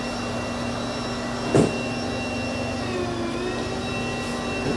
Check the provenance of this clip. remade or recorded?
recorded